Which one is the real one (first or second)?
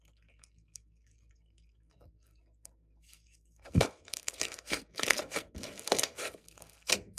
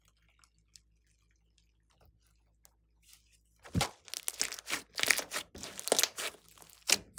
second